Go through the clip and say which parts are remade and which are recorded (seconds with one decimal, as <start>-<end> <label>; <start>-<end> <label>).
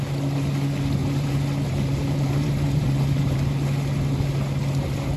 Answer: 0.0-1.0 recorded; 1.0-3.4 remade; 3.4-5.2 recorded